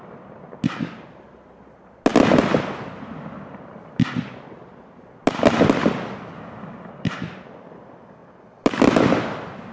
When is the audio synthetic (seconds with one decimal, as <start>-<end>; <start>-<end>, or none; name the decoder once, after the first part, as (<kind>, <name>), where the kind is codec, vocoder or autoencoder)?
none